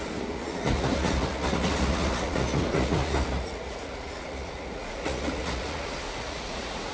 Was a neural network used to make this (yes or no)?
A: yes